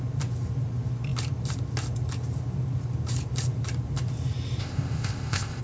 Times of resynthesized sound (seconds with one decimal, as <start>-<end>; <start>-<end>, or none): 4.6-5.6